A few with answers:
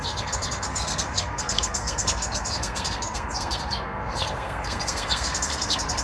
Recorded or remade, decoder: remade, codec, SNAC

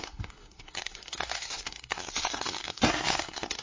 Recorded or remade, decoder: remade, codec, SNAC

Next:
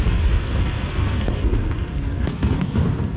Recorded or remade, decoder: remade, codec, SNAC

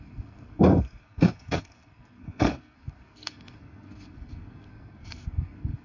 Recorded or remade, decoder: remade, codec, SNAC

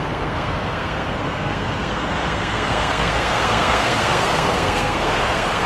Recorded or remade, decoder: remade, codec, SNAC